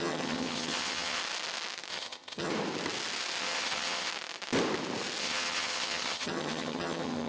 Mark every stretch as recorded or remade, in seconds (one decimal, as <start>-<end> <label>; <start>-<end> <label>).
0.0-1.2 remade; 1.2-1.9 recorded; 1.9-2.5 remade; 2.5-3.4 recorded; 3.4-4.1 remade; 4.1-5.2 recorded; 5.2-7.3 remade